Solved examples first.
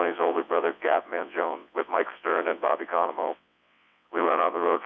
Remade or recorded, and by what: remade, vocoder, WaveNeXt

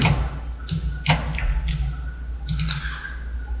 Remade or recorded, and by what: recorded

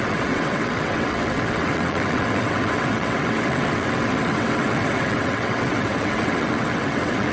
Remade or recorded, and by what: remade, vocoder, WaveNeXt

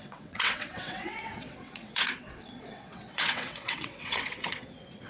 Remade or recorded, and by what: remade, vocoder, WaveNeXt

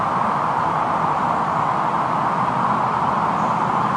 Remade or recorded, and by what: recorded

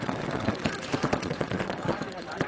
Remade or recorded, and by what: remade, vocoder, WaveNeXt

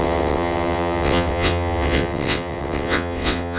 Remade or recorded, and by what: remade, vocoder, WaveNeXt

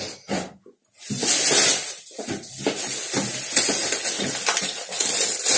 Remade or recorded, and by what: recorded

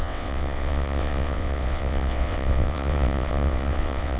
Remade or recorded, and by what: remade, vocoder, WaveNeXt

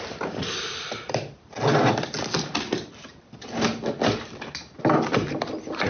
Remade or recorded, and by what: recorded